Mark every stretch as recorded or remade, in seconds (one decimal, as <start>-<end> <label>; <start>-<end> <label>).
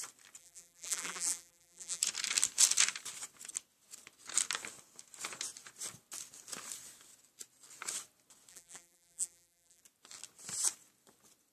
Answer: 0.0-0.4 recorded; 0.4-2.0 remade; 2.0-8.5 recorded; 8.5-9.8 remade; 9.8-11.5 recorded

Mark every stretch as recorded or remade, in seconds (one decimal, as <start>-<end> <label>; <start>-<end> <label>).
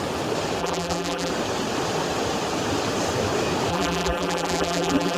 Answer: 0.0-0.6 recorded; 0.6-1.3 remade; 1.3-3.7 recorded; 3.7-5.2 remade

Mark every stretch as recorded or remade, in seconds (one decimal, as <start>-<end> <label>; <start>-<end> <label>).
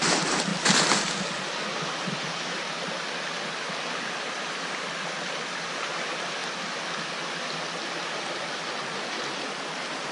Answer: 0.0-0.5 remade; 0.5-4.3 recorded; 4.3-6.4 remade; 6.4-9.7 recorded; 9.7-10.1 remade